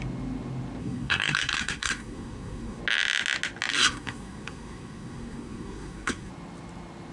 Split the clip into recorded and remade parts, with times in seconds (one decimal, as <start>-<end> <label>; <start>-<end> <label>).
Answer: 0.0-0.8 recorded; 0.8-2.8 remade; 2.8-3.7 recorded; 3.7-6.3 remade; 6.3-7.1 recorded